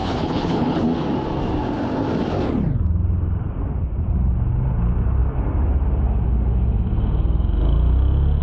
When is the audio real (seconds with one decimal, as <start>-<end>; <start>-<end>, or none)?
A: 0.8-8.4

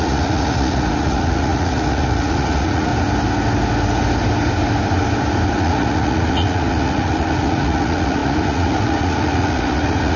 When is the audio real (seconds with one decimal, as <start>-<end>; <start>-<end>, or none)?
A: 2.9-5.5

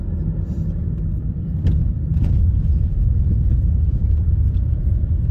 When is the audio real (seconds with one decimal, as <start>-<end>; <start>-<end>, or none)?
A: 0.0-2.1

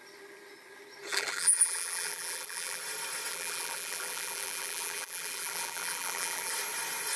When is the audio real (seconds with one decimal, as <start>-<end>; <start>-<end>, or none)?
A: 0.0-1.1; 2.8-3.3; 6.5-7.2

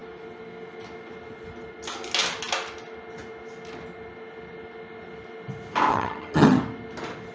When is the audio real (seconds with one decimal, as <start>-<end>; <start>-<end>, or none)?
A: 0.0-5.9; 6.6-7.3

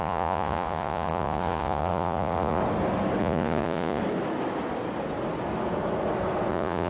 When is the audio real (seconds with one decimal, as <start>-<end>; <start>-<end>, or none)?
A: 2.6-3.2; 4.0-6.5

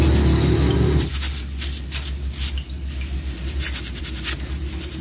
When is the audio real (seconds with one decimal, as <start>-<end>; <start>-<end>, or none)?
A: 0.0-5.0